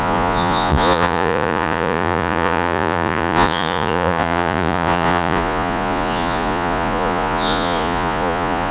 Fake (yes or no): yes